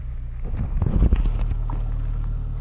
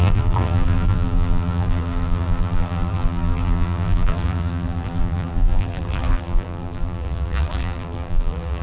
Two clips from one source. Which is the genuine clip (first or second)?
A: first